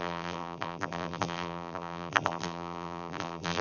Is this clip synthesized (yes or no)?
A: yes